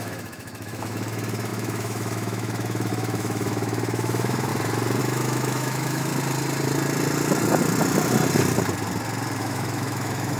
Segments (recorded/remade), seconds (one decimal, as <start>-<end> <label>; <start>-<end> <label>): 0.0-4.5 remade; 4.5-5.0 recorded; 5.0-6.1 remade; 6.1-9.4 recorded; 9.4-10.4 remade